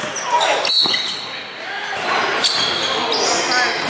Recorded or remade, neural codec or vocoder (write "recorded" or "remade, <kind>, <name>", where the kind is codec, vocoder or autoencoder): recorded